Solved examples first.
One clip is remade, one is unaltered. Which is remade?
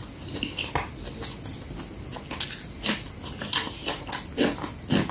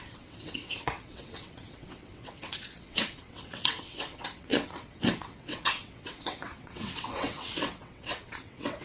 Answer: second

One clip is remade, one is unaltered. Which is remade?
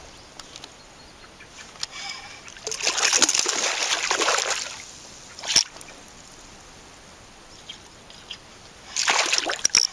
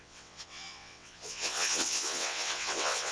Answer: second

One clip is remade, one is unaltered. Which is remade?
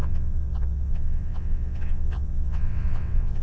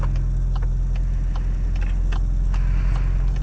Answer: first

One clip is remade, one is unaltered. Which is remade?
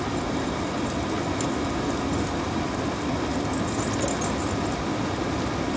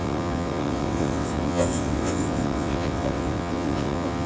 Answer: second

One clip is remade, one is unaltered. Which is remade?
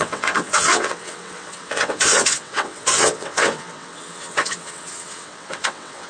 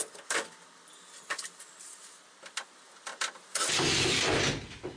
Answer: first